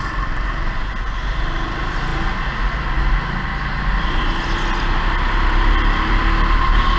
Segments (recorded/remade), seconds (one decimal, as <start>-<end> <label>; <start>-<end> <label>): 0.0-7.0 recorded

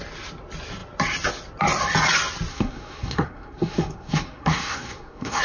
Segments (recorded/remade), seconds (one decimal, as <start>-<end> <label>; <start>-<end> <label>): 0.0-2.5 recorded; 2.5-5.4 remade

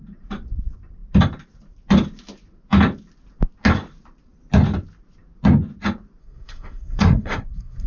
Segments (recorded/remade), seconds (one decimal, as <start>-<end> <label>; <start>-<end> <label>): 0.0-6.2 recorded; 6.2-7.9 remade

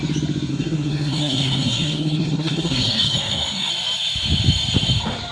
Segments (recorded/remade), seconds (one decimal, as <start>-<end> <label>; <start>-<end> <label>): 0.0-0.5 recorded; 0.5-3.7 remade; 3.7-5.3 recorded

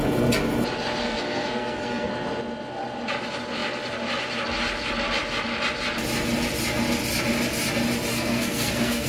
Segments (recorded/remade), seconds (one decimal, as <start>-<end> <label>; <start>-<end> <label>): 0.0-1.0 recorded; 1.0-2.1 remade; 2.1-8.1 recorded; 8.1-9.1 remade

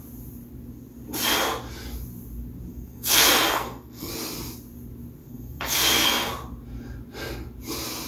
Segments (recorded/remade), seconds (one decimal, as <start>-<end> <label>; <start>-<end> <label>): 0.0-2.7 recorded; 2.7-4.1 remade; 4.1-5.2 recorded; 5.2-6.3 remade; 6.3-8.1 recorded

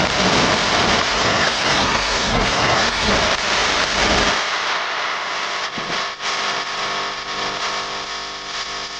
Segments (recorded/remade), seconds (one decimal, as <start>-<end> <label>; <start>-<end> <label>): 0.0-1.0 recorded; 1.0-3.1 remade; 3.1-9.0 recorded